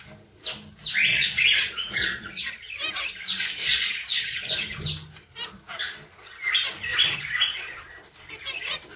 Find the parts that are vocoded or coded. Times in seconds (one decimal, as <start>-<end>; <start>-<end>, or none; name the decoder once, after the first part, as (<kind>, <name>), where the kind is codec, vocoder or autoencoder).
1.1-2.6 (vocoder, Vocos); 3.6-4.5; 6.9-7.9